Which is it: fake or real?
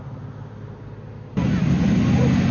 real